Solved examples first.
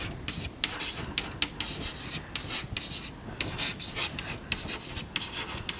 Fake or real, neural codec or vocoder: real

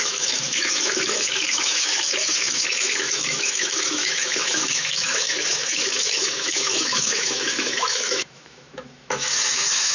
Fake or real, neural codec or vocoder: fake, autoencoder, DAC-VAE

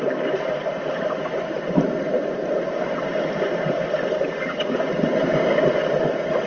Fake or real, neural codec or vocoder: real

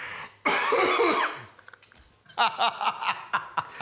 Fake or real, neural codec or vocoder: real